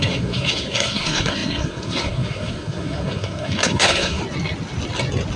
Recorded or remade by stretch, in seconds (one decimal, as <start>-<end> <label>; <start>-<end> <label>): 0.0-4.2 remade; 4.2-5.4 recorded